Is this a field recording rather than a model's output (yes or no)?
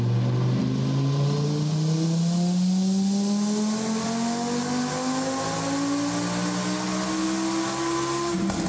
yes